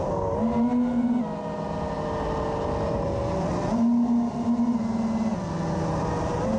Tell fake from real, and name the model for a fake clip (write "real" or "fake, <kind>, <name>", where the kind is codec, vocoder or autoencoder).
real